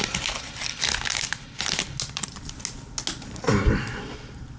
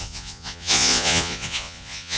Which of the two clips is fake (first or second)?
second